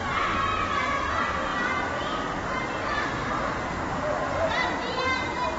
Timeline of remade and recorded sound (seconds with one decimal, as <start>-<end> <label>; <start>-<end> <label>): 0.0-5.6 recorded